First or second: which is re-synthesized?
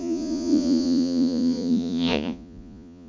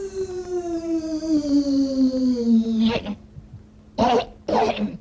first